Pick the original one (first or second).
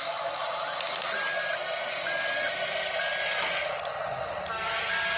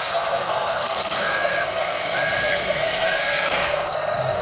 first